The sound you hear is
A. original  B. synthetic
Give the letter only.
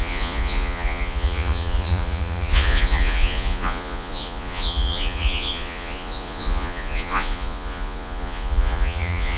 B